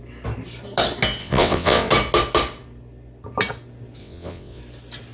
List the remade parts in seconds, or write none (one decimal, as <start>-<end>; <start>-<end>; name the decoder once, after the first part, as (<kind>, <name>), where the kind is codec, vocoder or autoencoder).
1.2-1.9 (vocoder, WaveNeXt); 4.0-4.6